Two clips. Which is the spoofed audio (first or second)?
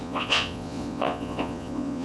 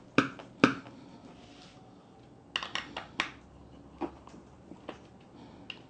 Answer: first